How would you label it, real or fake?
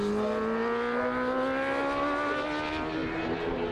real